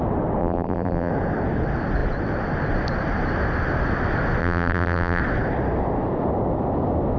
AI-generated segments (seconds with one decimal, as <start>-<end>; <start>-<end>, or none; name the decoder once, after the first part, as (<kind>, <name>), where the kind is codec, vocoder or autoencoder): 0.4-1.1 (vocoder, BigVGAN v2); 4.4-5.2